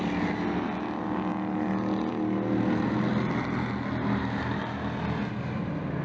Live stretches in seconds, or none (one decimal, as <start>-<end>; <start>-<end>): 0.0-6.0